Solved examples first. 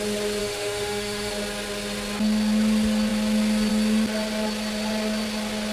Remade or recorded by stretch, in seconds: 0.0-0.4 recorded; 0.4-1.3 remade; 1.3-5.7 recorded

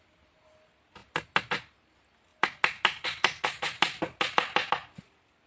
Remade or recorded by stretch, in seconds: 0.0-5.5 recorded

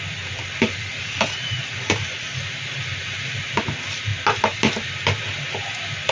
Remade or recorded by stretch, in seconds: 0.0-6.1 recorded

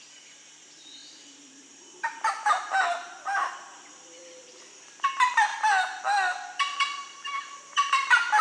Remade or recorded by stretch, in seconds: 0.0-5.5 remade; 5.5-6.6 recorded; 6.6-8.4 remade

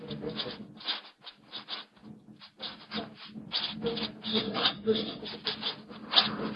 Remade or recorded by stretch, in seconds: 0.0-4.3 recorded; 4.3-5.2 remade; 5.2-6.6 recorded

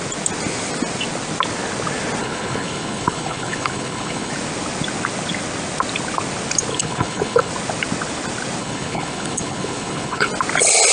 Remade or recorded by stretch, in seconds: 0.0-2.2 recorded; 2.2-4.3 remade; 4.3-6.7 recorded; 6.7-7.5 remade; 7.5-8.6 recorded; 8.6-10.3 remade; 10.3-10.9 recorded

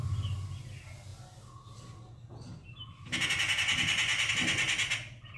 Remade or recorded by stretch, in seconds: 0.0-5.4 recorded

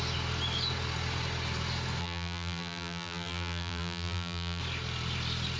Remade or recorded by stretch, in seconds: 0.0-2.0 recorded; 2.0-4.6 remade; 4.6-5.6 recorded